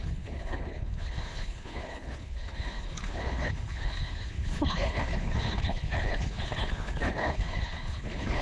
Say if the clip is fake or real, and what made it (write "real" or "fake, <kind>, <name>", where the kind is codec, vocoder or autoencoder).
fake, codec, HILCodec